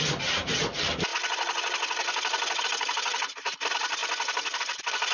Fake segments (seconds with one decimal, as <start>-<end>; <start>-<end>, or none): none